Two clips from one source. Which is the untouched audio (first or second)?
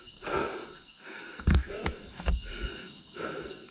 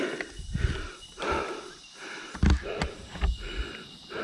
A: second